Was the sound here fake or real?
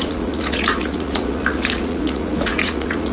fake